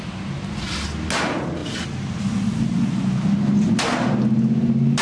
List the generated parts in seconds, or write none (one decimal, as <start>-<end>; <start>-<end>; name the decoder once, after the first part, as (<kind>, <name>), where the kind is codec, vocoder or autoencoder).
none